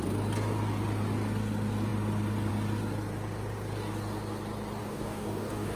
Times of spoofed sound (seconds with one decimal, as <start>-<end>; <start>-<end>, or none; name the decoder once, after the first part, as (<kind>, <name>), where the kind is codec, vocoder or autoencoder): 4.8-5.8 (codec, DAC)